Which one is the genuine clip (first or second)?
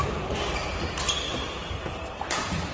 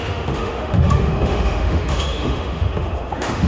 first